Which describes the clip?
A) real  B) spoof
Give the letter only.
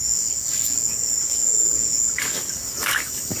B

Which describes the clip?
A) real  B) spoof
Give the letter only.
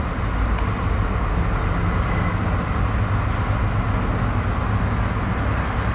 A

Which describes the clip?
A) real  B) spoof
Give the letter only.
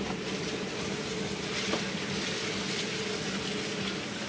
A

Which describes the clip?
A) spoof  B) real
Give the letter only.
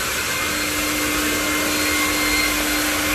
B